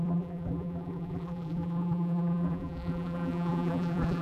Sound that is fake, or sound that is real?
fake